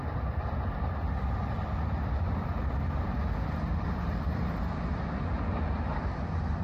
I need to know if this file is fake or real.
fake